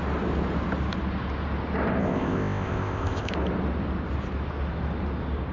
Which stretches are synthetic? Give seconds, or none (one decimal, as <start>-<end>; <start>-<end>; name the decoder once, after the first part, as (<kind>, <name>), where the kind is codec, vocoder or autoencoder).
2.0-3.3 (codec, ZipCodec)